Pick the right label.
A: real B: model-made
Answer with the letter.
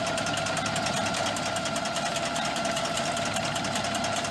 A